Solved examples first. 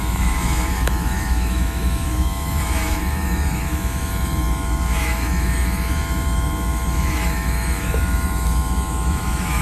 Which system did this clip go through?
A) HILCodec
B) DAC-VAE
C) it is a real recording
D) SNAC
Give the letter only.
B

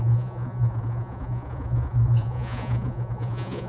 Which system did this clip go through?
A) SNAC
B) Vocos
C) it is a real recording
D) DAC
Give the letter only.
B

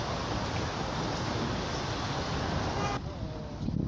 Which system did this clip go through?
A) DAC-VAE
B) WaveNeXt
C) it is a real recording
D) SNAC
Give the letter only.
C